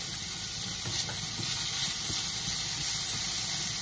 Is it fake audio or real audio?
real